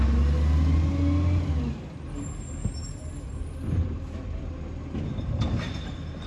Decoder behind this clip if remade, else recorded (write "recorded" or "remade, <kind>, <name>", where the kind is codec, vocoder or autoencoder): recorded